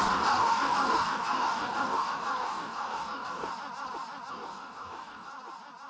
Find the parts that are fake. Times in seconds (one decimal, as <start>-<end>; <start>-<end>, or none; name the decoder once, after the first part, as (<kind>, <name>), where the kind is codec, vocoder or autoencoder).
0.0-3.5 (codec, DAC); 4.3-5.3